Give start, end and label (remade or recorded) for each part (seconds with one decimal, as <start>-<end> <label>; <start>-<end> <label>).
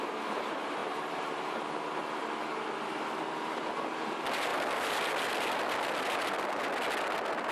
0.0-7.5 recorded